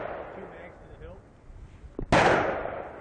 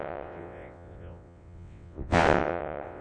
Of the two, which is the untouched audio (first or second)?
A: first